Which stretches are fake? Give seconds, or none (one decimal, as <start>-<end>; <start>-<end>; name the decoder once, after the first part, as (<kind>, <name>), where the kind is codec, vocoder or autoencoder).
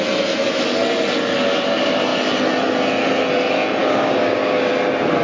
3.8-4.7 (codec, DAC)